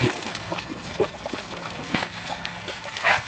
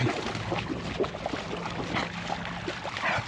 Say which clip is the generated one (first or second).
first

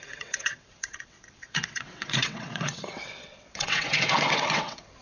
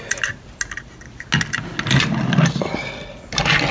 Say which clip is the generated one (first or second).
first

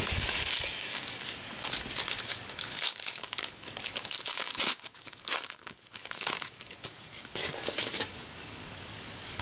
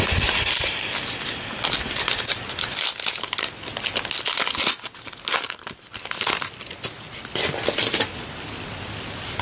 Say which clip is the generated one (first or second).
first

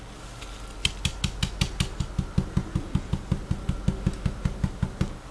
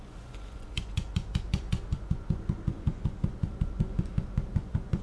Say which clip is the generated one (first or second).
second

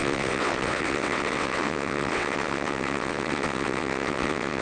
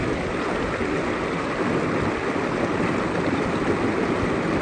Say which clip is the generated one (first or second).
first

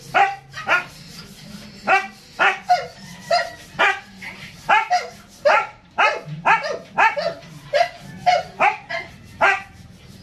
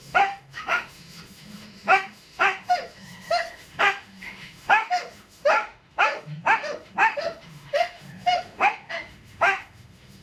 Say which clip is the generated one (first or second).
second